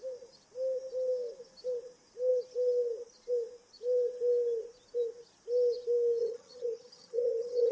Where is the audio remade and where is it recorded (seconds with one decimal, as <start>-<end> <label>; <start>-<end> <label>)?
0.0-6.2 recorded; 6.2-7.7 remade